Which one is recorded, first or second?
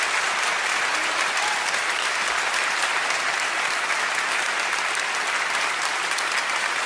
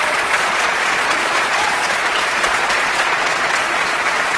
first